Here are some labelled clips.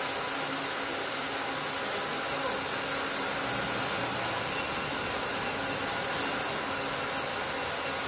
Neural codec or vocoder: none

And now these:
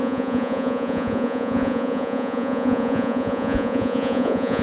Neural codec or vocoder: vocoder, Vocos